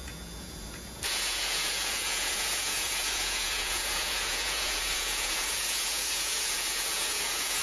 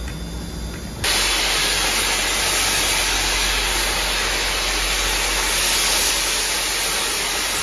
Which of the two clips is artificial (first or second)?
first